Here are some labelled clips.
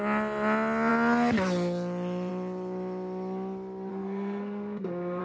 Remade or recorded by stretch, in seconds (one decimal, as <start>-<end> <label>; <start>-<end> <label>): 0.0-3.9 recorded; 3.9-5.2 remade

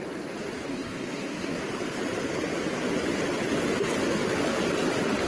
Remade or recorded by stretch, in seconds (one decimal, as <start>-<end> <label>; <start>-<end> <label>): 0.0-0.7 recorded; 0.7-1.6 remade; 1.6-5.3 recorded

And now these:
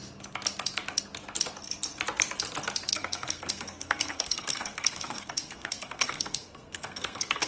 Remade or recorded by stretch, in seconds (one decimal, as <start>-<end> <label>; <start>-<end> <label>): 0.0-2.9 recorded; 2.9-7.5 remade

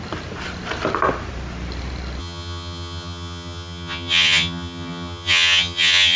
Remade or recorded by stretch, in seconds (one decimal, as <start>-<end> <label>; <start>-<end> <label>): 0.0-2.2 recorded; 2.2-6.2 remade

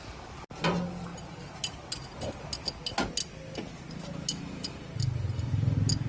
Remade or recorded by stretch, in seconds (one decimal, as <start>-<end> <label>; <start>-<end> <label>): 0.0-6.1 recorded

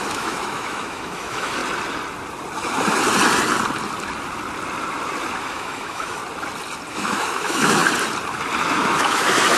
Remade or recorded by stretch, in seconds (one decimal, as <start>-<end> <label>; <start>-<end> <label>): 0.0-1.6 remade; 1.6-5.4 recorded; 5.4-6.2 remade; 6.2-6.9 recorded; 6.9-7.8 remade; 7.8-8.6 recorded; 8.6-9.6 remade

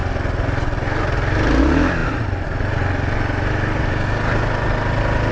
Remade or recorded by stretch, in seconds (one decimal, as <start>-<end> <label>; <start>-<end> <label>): 0.0-5.3 recorded